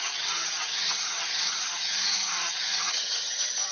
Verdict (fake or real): fake